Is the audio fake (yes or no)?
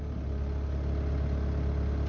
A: no